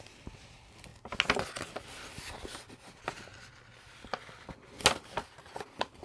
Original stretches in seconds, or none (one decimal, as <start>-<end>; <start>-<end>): 0.0-6.0